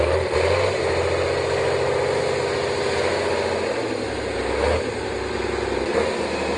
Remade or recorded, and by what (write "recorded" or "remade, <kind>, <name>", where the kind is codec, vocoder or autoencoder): recorded